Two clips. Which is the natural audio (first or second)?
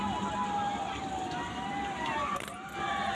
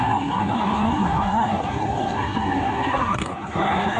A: first